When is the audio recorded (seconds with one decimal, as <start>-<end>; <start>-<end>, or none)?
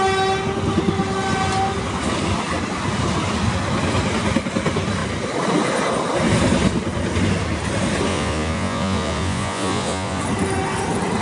0.0-8.1; 10.2-11.2